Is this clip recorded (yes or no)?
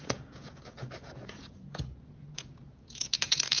no